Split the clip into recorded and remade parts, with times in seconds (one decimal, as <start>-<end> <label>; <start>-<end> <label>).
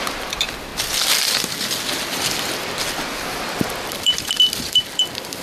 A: 0.0-0.7 remade; 0.7-3.9 recorded; 3.9-5.4 remade